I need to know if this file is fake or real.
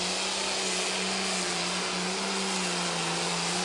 real